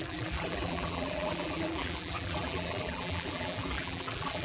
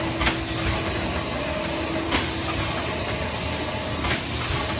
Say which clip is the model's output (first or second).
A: first